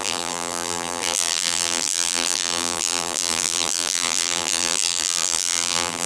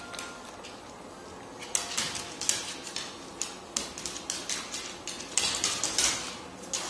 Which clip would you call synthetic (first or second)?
first